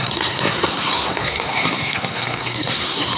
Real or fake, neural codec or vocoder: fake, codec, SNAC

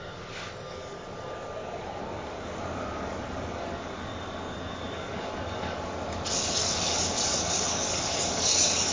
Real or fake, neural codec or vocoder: fake, codec, DAC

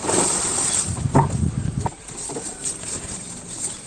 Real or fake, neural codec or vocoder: real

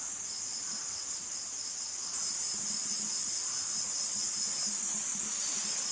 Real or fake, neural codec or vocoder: real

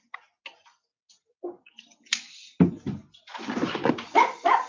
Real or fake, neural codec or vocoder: real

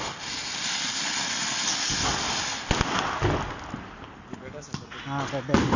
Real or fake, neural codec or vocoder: real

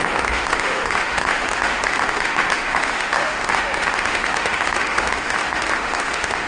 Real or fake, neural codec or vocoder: fake, autoencoder, DAC-VAE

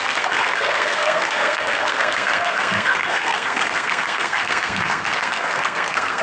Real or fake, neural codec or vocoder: fake, codec, SNAC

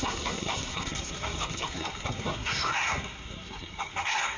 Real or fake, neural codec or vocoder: fake, codec, SNAC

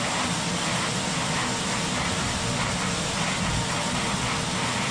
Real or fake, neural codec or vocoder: real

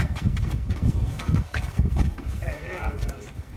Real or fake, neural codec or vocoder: fake, codec, SNAC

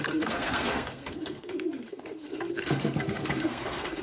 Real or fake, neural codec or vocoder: fake, codec, SNAC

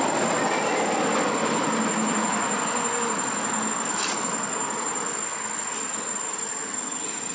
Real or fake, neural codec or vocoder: real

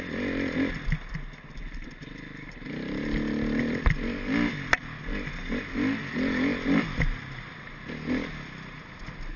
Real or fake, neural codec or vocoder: real